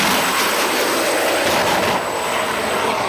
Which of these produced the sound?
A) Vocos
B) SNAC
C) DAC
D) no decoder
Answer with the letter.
D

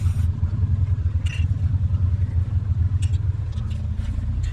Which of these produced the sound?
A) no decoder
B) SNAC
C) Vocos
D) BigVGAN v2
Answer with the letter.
A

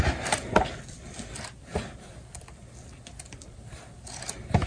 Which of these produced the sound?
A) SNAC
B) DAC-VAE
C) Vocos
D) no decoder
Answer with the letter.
D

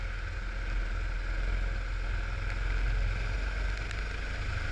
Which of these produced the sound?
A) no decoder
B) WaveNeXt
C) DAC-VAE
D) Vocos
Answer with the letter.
A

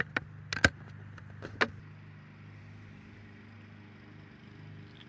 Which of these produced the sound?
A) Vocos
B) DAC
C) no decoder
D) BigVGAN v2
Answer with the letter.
C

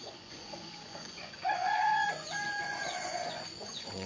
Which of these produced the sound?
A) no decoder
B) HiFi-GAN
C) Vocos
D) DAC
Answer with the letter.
C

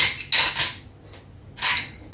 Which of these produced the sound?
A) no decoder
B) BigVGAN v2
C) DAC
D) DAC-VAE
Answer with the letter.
A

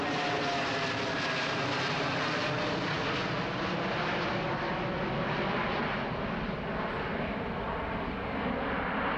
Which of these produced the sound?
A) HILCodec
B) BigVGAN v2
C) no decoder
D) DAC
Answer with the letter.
C